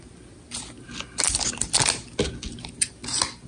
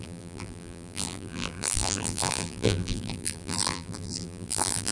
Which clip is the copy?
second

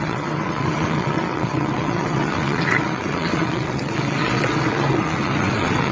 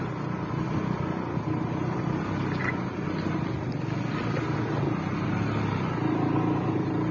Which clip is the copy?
first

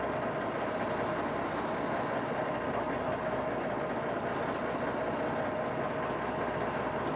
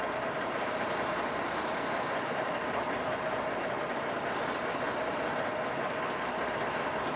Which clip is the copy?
second